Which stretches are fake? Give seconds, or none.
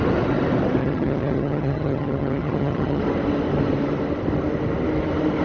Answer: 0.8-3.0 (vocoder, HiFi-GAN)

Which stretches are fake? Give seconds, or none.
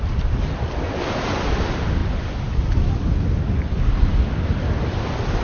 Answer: none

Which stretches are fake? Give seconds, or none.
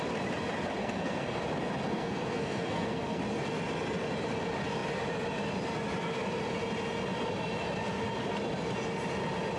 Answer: 0.8-1.4 (codec, SNAC); 1.9-3.2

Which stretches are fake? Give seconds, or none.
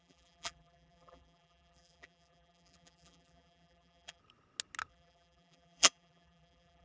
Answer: 0.0-4.2 (vocoder, BigVGAN v2); 4.9-6.8